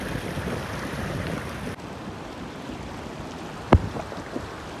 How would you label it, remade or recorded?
recorded